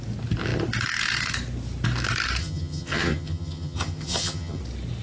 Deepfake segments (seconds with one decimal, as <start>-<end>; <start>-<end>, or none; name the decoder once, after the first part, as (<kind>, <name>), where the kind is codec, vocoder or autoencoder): 2.4-4.6 (vocoder, HiFi-GAN)